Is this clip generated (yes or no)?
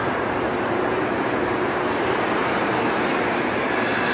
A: yes